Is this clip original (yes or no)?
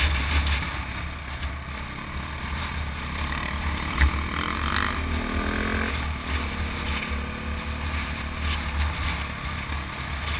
yes